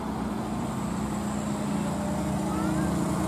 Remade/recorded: recorded